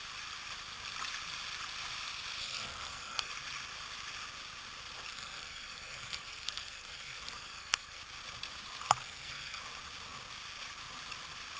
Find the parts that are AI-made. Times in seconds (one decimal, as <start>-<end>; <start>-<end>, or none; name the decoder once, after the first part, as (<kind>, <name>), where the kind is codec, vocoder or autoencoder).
2.4-3.3 (codec, SNAC); 5.1-8.0; 9.0-9.6